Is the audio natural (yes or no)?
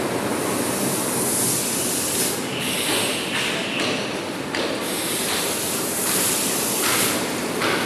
yes